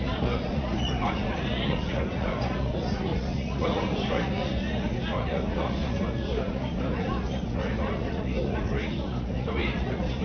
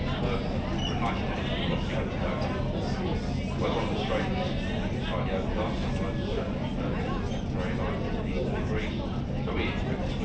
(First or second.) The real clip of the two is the second